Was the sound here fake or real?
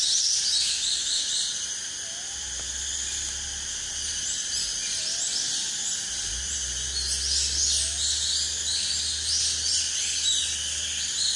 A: real